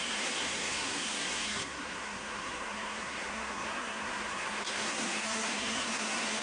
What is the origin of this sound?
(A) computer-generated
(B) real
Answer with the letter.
A